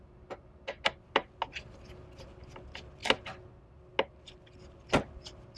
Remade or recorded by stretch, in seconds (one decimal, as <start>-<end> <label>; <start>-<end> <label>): 0.0-5.6 recorded